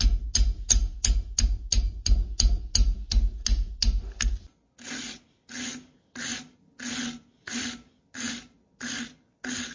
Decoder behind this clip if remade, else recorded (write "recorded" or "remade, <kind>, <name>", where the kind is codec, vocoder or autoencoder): recorded